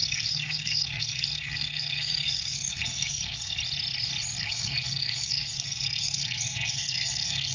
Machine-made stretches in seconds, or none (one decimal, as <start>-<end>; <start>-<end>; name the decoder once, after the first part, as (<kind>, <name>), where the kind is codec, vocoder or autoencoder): 0.0-3.6 (codec, SNAC); 4.4-7.5